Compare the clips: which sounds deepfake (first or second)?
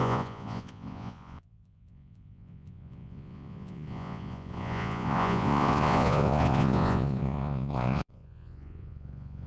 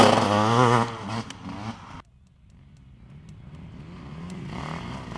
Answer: first